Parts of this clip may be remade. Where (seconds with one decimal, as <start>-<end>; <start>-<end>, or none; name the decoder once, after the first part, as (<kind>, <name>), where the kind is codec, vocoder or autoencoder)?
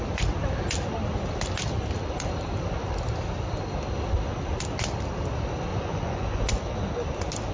5.7-6.5 (vocoder, Vocos)